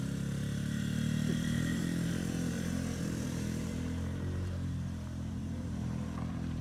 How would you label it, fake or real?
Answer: fake